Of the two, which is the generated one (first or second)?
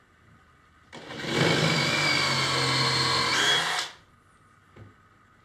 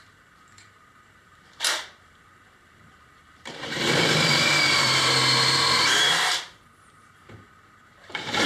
second